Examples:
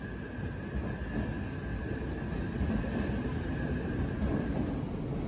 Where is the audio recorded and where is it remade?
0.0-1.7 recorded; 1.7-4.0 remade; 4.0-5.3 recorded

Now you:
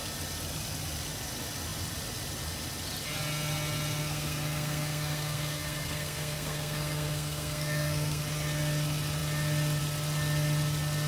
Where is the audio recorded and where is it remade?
0.0-4.0 recorded; 4.0-8.2 remade; 8.2-11.1 recorded

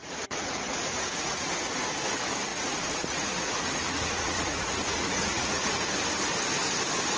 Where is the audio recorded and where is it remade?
0.0-1.5 remade; 1.5-2.5 recorded; 2.5-5.9 remade; 5.9-7.2 recorded

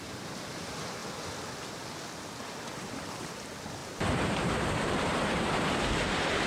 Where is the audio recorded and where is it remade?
0.0-1.0 remade; 1.0-2.7 recorded; 2.7-6.5 remade

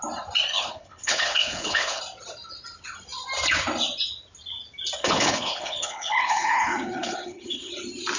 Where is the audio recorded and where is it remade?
0.0-0.5 recorded; 0.5-2.0 remade; 2.0-5.0 recorded; 5.0-7.7 remade; 7.7-8.2 recorded

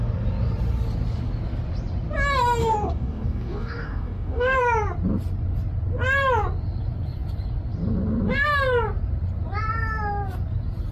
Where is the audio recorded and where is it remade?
0.0-2.6 recorded; 2.6-4.6 remade; 4.6-10.9 recorded

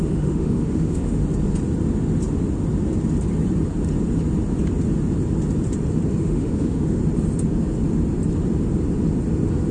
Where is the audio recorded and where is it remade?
0.0-1.2 remade; 1.2-6.2 recorded; 6.2-7.0 remade; 7.0-9.7 recorded

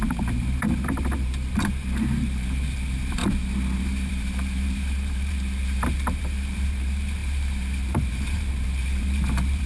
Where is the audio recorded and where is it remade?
0.0-3.2 remade; 3.2-3.8 recorded; 3.8-9.7 remade